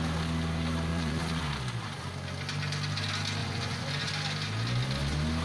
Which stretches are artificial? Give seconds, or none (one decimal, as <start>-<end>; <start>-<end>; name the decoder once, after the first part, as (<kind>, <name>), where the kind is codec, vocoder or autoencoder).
0.9-1.4 (vocoder, Vocos); 3.4-4.1